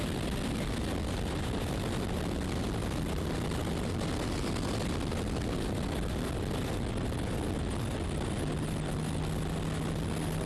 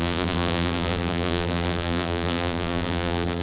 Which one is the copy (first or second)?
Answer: second